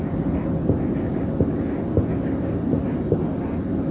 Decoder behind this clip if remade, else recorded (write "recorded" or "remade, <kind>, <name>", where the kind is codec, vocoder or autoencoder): recorded